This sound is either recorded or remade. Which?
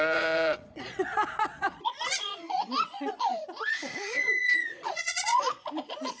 remade